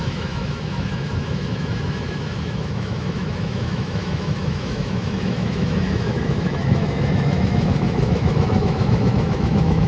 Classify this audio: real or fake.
fake